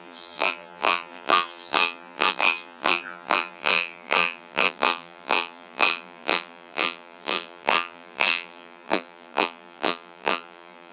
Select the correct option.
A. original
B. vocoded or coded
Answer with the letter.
B